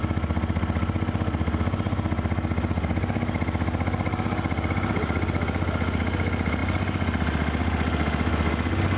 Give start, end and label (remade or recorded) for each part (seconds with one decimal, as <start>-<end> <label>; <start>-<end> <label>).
0.0-9.0 recorded